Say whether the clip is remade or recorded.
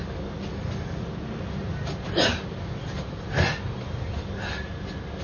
recorded